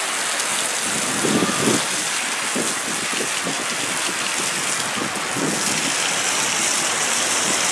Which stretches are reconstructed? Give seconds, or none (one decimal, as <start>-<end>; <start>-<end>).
none